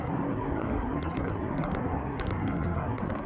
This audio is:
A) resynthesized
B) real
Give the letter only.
A